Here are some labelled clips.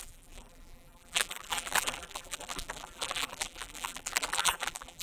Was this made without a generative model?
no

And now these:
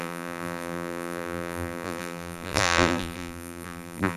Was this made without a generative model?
no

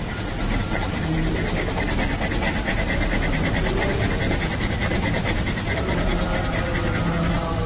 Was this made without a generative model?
yes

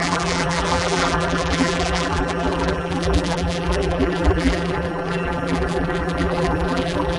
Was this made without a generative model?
no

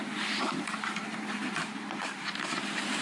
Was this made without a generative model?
no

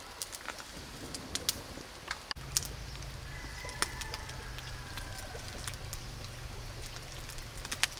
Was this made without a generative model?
yes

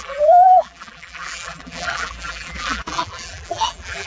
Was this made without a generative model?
no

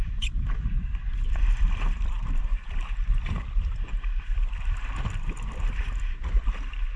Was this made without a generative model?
no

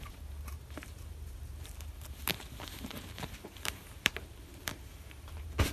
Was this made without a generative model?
no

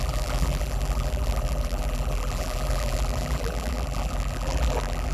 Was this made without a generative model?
no